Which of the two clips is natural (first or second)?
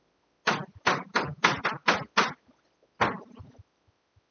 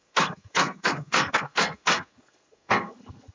first